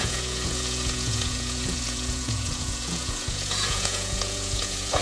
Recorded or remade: remade